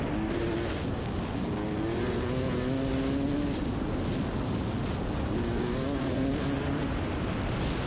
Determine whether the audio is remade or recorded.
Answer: recorded